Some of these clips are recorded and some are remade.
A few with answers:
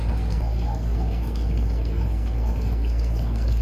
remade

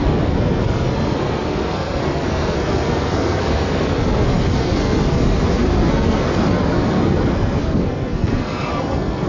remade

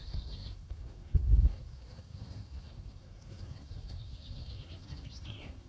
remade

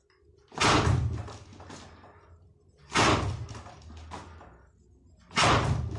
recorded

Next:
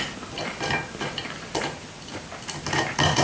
recorded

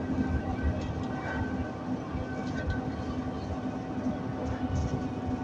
recorded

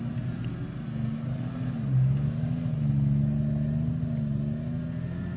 recorded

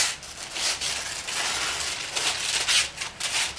recorded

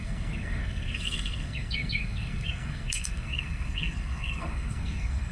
remade